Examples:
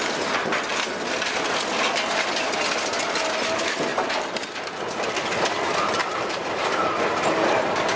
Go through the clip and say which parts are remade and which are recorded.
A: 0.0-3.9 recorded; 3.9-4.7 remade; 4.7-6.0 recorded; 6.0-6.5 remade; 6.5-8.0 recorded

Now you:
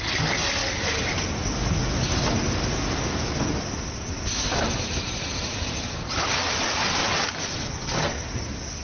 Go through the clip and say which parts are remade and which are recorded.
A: 0.0-8.8 recorded

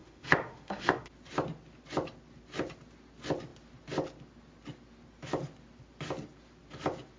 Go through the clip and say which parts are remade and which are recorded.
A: 0.0-1.1 remade; 1.1-7.2 recorded

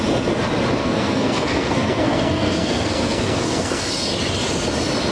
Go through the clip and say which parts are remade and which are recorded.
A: 0.0-0.8 recorded; 0.8-3.9 remade; 3.9-5.1 recorded

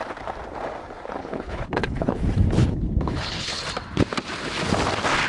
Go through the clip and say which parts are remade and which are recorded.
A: 0.0-1.2 recorded; 1.2-2.2 remade; 2.2-2.6 recorded; 2.6-3.6 remade; 3.6-5.3 recorded